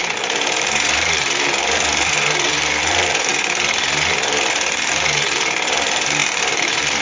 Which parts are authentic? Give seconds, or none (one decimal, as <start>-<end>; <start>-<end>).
3.3-4.5